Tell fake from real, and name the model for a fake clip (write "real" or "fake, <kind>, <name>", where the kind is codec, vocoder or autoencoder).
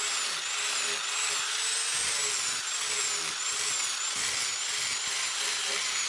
real